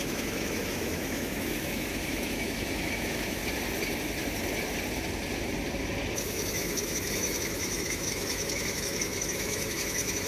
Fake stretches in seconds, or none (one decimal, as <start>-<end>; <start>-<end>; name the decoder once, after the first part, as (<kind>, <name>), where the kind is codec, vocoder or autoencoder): 0.0-3.4 (autoencoder, DAC-VAE); 6.1-10.3